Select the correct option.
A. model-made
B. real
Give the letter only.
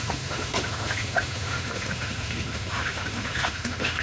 A